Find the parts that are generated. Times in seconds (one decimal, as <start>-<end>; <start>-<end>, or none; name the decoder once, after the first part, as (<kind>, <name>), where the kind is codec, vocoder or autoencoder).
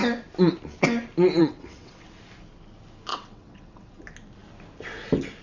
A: 1.4-2.2 (vocoder, WaveNeXt); 3.1-4.0